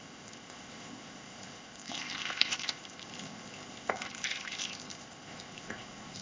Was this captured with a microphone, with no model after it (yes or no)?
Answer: no